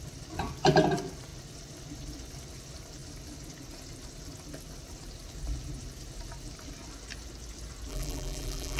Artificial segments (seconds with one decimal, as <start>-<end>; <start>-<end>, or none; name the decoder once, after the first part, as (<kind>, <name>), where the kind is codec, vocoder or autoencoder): 7.9-8.8 (vocoder, BigVGAN v2)

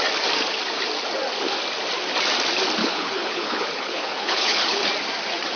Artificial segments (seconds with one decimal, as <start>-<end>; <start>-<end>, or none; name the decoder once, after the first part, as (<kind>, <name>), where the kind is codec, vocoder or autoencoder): 2.8-4.9 (codec, HILCodec)

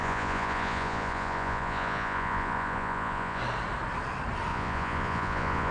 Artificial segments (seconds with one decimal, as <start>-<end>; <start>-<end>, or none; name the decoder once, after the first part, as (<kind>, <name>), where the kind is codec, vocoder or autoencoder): 0.0-3.4 (vocoder, Vocos); 4.5-5.7

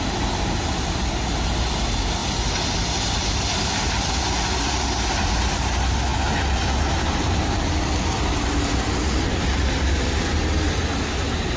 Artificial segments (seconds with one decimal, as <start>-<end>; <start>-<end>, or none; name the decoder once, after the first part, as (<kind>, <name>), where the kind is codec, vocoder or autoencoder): none

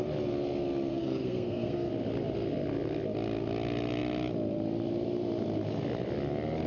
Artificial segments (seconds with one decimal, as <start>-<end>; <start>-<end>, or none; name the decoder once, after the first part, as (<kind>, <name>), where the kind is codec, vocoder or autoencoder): 0.9-1.9 (codec, SNAC)

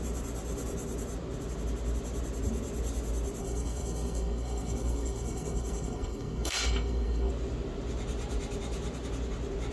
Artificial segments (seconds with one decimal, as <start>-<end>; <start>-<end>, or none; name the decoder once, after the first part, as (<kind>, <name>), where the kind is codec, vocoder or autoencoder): 3.4-7.3 (codec, SNAC)